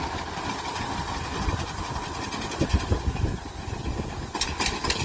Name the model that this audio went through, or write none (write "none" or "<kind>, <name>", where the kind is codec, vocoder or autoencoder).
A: none